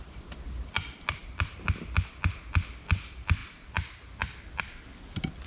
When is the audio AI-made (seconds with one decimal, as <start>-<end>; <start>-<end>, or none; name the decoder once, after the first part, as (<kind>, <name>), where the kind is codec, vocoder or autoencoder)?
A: none